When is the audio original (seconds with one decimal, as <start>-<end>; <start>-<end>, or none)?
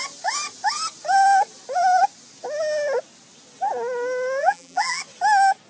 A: 0.0-4.4; 5.0-5.7